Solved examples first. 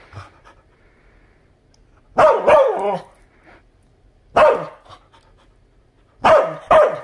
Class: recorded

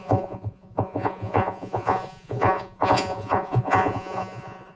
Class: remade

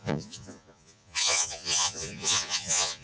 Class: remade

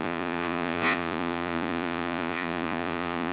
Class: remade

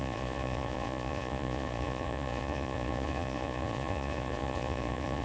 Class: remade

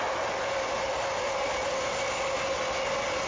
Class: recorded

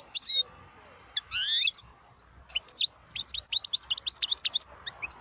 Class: recorded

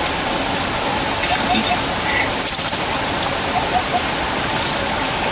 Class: recorded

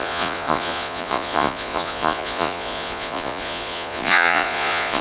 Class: remade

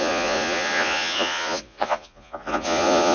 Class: remade